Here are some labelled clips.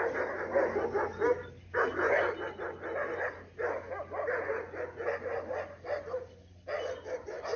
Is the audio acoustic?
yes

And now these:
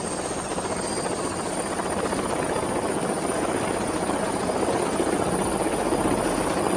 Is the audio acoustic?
yes